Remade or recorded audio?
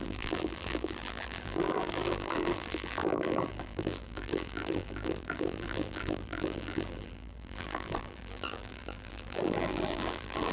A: remade